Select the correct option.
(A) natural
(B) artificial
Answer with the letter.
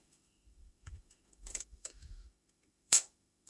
B